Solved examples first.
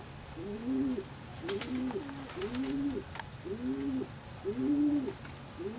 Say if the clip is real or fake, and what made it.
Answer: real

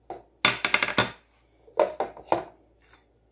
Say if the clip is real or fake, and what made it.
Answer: real